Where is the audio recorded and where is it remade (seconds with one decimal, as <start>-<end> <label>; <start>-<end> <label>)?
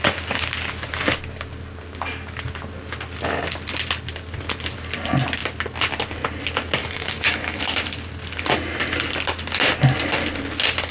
0.0-6.8 recorded; 6.8-7.6 remade; 7.6-10.9 recorded